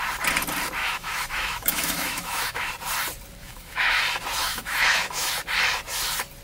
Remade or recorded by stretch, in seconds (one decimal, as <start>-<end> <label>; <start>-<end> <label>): 0.0-0.8 recorded; 0.8-2.7 remade; 2.7-3.4 recorded; 3.4-4.0 remade; 4.0-4.4 recorded; 4.4-5.3 remade; 5.3-6.4 recorded

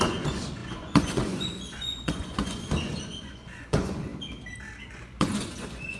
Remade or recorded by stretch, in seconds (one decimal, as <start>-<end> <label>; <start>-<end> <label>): 0.0-4.1 remade; 4.1-4.9 recorded; 4.9-6.0 remade

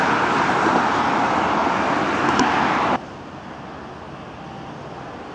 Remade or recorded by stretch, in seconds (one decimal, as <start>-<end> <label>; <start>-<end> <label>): 0.0-5.3 recorded

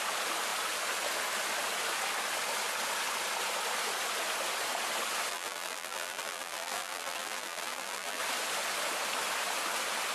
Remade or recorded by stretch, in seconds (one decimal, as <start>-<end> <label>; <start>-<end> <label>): 0.0-5.3 recorded; 5.3-8.2 remade; 8.2-10.1 recorded

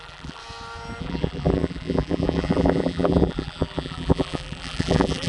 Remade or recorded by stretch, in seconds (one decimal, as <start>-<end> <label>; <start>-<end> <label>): 0.0-0.4 remade; 0.4-1.0 recorded; 1.0-5.3 remade

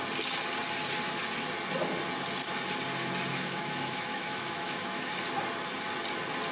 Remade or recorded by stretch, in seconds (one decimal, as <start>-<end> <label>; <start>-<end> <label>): 0.0-3.3 recorded; 3.3-5.1 remade; 5.1-6.5 recorded

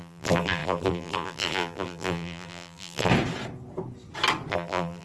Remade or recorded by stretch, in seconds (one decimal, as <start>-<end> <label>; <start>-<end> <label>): 0.0-3.1 remade; 3.1-4.5 recorded; 4.5-5.0 remade